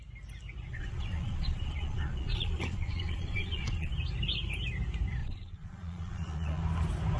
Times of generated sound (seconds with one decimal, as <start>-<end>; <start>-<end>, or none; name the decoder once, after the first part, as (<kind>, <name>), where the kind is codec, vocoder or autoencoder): 0.7-3.9 (vocoder, Vocos); 5.2-6.6